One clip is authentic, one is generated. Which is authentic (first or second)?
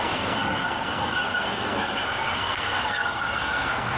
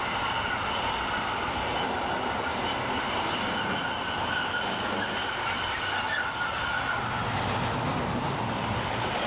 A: second